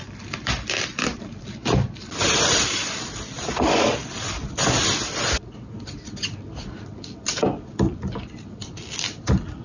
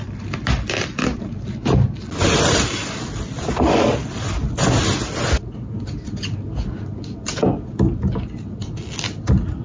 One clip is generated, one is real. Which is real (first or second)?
second